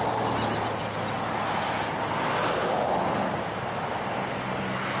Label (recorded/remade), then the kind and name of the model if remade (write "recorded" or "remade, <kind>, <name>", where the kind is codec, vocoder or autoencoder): recorded